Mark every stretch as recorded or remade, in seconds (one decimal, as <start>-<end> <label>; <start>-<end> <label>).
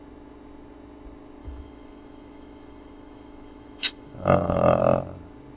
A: 0.0-1.4 recorded; 1.4-4.8 remade; 4.8-5.6 recorded